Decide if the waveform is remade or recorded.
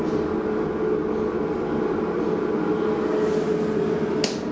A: recorded